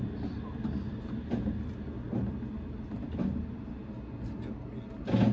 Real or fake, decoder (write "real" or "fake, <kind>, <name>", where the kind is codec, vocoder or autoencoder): real